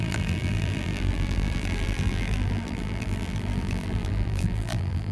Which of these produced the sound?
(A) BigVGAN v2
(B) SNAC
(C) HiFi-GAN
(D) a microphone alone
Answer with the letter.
A